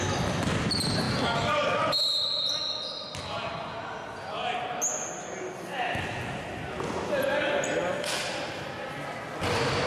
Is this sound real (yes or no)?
yes